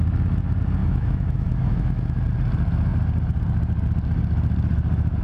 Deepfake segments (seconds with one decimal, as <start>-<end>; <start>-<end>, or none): 0.8-2.2